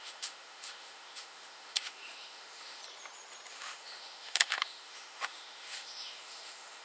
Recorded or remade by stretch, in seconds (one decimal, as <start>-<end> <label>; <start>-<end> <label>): 0.0-2.8 remade; 2.8-3.5 recorded; 3.5-6.8 remade